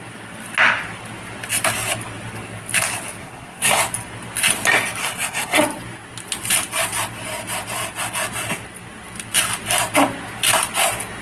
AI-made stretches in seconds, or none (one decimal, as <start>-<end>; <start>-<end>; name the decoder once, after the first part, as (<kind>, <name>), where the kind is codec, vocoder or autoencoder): 3.2-3.8 (codec, SNAC); 5.0-5.6